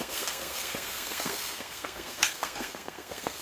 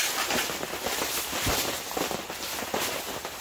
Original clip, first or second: second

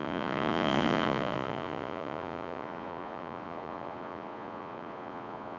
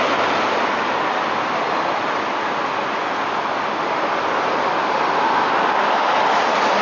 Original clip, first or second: second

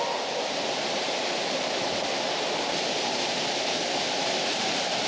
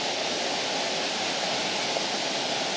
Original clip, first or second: second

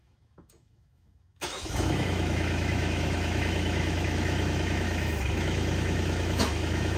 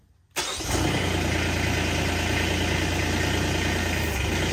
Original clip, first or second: second